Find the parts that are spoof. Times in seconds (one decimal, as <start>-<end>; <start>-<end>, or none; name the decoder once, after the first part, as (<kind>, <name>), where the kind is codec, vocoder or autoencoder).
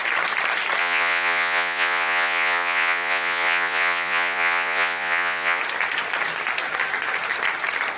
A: 0.8-5.6 (vocoder, Vocos)